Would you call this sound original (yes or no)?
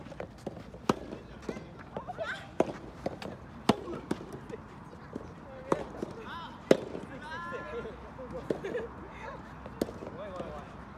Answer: yes